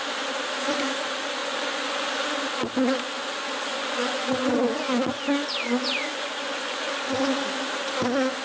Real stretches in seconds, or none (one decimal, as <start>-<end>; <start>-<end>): 0.0-1.4; 2.1-3.7; 6.9-8.4